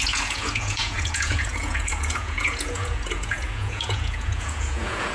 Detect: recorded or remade remade